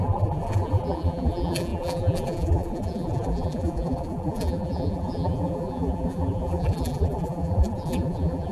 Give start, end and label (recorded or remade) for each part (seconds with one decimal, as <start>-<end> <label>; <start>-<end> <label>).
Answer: 0.0-8.5 remade